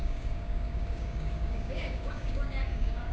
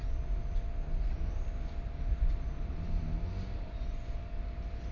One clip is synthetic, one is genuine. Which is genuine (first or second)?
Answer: second